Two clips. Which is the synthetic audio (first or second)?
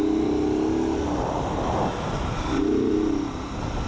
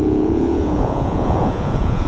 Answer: second